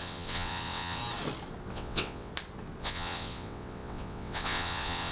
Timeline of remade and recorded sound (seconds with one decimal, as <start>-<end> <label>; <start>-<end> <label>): 0.0-1.0 remade; 1.0-1.7 recorded; 1.7-2.3 remade; 2.3-2.8 recorded; 2.8-5.1 remade